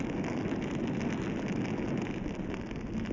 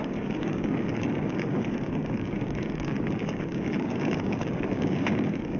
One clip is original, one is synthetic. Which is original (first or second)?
first